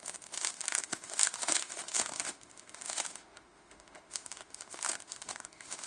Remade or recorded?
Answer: remade